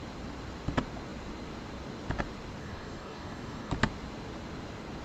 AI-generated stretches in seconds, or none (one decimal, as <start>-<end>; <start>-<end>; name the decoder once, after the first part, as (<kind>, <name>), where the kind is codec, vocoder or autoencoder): 2.6-3.7 (codec, DAC)